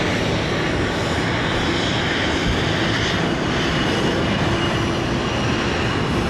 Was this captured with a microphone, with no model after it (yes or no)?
yes